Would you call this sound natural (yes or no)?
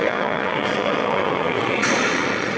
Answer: no